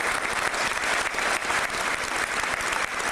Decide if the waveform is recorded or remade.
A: recorded